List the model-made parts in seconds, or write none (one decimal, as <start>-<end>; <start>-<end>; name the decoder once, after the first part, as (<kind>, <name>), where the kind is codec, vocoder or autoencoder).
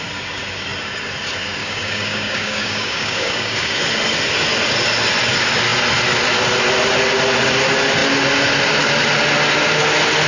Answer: 1.6-3.8 (codec, DAC)